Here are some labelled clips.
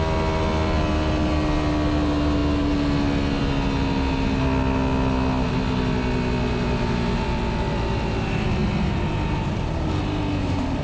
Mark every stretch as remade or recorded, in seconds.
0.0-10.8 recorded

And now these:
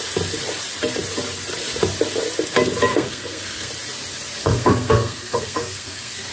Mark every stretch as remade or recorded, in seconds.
0.0-2.9 recorded; 2.9-3.7 remade; 3.7-4.4 recorded; 4.4-6.3 remade

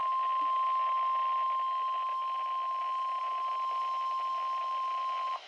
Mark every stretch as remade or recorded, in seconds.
0.0-5.5 recorded

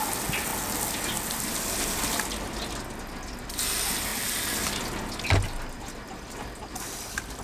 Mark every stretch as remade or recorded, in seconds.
0.0-7.4 recorded

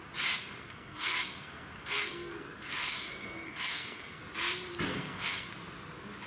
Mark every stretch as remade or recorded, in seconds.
0.0-0.4 recorded; 0.4-4.2 remade; 4.2-4.9 recorded; 4.9-5.5 remade; 5.5-6.3 recorded

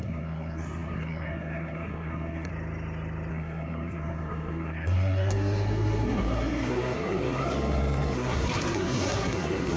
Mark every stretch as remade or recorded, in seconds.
0.0-2.5 remade; 2.5-3.3 recorded; 3.3-9.8 remade

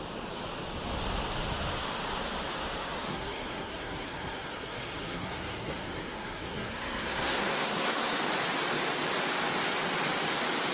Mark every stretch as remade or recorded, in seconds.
0.0-3.1 recorded; 3.1-8.2 remade; 8.2-10.7 recorded

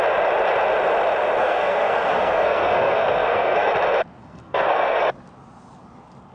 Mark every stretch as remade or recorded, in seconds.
0.0-1.4 recorded; 1.4-3.7 remade; 3.7-4.2 recorded; 4.2-5.0 remade; 5.0-6.3 recorded